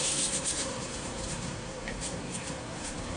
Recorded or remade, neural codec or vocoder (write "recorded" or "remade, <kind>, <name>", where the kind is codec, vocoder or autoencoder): remade, codec, SNAC